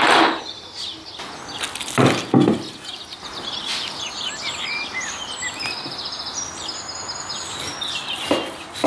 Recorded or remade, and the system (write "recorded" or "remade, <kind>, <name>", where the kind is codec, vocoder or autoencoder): recorded